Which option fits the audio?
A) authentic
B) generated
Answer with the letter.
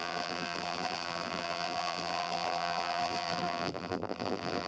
B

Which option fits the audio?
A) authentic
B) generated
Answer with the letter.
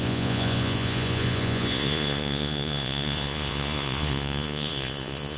B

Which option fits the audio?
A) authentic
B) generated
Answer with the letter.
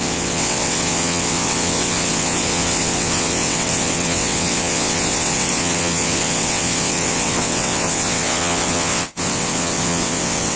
B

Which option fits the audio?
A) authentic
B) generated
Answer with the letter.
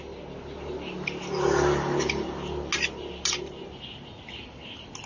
A